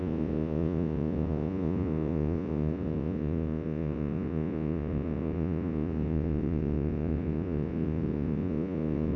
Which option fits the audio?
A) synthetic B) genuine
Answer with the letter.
A